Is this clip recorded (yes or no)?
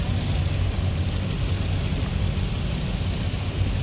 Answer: yes